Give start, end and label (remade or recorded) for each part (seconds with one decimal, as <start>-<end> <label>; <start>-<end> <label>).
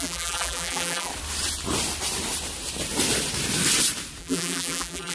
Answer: 0.0-1.1 remade; 1.1-4.2 recorded; 4.2-5.1 remade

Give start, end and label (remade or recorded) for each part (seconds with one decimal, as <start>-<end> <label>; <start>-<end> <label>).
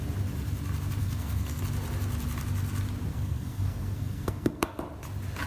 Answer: 0.0-1.0 recorded; 1.0-1.6 remade; 1.6-3.1 recorded; 3.1-4.8 remade; 4.8-5.5 recorded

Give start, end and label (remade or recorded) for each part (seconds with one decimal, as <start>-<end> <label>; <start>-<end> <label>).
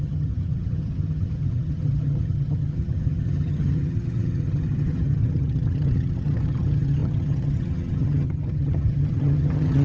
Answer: 0.0-9.8 remade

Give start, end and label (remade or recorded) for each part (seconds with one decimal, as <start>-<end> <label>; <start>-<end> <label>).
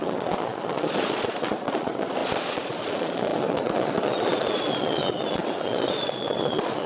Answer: 0.0-6.9 remade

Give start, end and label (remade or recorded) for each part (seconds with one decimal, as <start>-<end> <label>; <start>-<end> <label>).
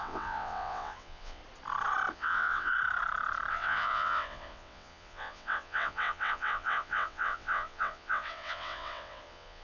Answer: 0.0-1.4 remade; 1.4-2.1 recorded; 2.1-2.7 remade; 2.7-3.5 recorded; 3.5-9.6 remade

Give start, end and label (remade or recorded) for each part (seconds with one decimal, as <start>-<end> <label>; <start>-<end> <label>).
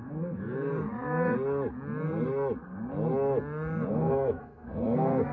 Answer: 0.0-0.7 remade; 0.7-3.9 recorded; 3.9-5.3 remade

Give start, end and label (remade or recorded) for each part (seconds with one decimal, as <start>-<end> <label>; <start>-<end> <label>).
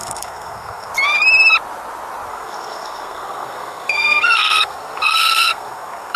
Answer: 0.0-0.9 remade; 0.9-2.3 recorded; 2.3-6.2 remade